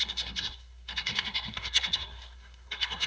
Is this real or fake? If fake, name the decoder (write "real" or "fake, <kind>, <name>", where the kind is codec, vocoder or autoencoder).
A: fake, codec, SNAC